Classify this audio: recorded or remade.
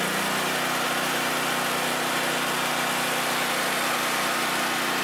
recorded